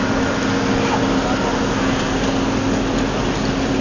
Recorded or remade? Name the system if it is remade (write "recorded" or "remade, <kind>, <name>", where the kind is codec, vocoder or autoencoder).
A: recorded